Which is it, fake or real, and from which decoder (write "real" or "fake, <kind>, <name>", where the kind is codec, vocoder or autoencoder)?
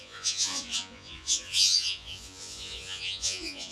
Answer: fake, vocoder, Vocos